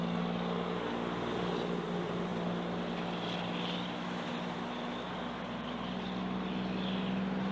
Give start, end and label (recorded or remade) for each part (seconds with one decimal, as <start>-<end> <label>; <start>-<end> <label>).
0.0-7.5 recorded